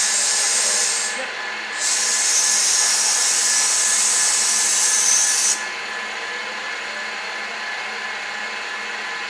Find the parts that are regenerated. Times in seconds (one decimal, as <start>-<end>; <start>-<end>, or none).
none